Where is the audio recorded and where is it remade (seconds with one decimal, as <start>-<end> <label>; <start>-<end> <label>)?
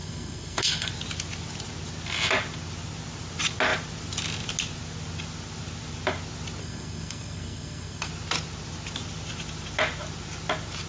0.0-0.9 remade; 0.9-6.6 recorded; 6.6-8.1 remade; 8.1-10.9 recorded